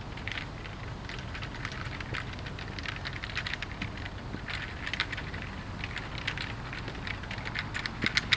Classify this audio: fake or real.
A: real